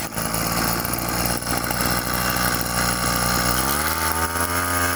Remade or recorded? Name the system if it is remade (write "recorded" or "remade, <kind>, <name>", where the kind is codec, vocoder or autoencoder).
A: recorded